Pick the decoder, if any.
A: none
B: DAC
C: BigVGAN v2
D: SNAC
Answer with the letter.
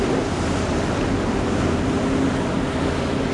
A